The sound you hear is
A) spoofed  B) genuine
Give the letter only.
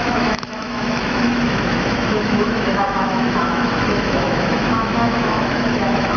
A